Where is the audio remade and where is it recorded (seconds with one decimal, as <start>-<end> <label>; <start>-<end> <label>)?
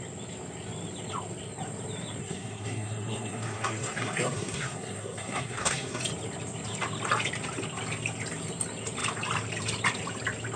0.0-2.2 recorded; 2.2-6.0 remade; 6.0-10.6 recorded